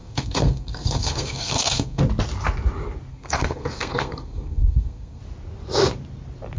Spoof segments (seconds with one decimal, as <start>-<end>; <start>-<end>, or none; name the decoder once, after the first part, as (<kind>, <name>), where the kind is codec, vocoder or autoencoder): 0.0-2.0 (codec, SNAC); 3.1-5.2